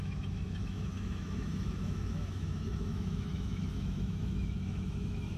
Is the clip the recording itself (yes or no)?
no